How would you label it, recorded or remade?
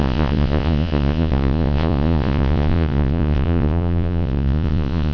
remade